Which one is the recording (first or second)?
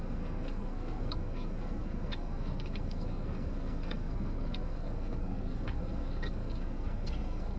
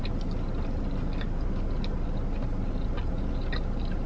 second